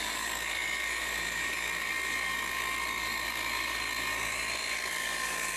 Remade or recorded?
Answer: remade